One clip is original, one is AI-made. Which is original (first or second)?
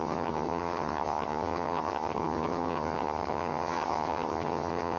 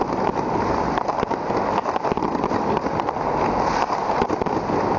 second